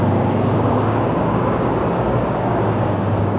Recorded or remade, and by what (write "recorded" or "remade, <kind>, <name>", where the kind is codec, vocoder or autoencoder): remade, codec, DAC